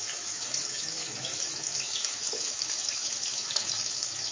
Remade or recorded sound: remade